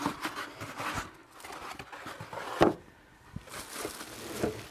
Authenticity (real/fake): real